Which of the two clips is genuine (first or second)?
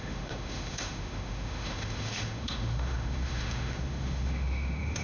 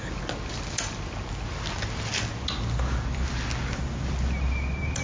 second